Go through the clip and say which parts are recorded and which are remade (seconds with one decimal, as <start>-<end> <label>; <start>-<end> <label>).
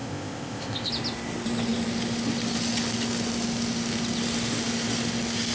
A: 0.0-0.9 remade; 0.9-5.5 recorded